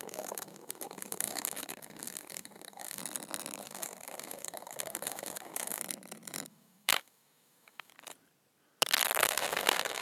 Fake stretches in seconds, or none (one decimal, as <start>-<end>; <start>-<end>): 0.0-3.0; 3.6-5.8; 6.5-7.9; 9.2-10.0